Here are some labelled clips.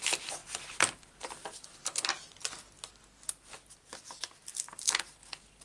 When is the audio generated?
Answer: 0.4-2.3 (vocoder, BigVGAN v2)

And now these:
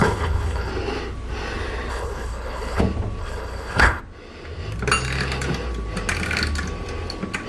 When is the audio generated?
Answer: 0.0-0.7 (codec, HILCodec); 1.9-2.8; 3.2-4.0

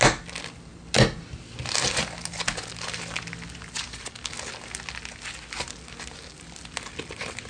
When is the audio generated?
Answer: none

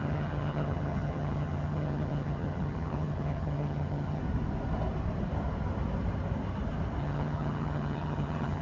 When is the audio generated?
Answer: 0.0-4.2 (vocoder, HiFi-GAN); 7.0-8.6

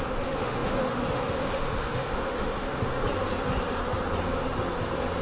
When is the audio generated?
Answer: 0.0-2.9 (autoencoder, DAC-VAE)